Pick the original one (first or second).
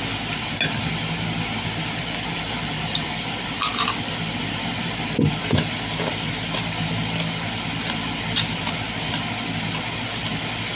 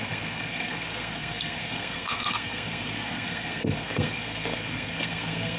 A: first